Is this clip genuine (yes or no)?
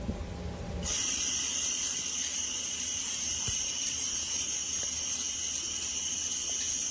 no